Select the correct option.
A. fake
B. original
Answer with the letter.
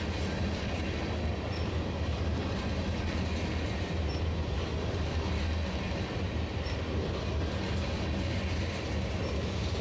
B